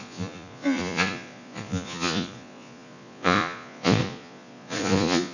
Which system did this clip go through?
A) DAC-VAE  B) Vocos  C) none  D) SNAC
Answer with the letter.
B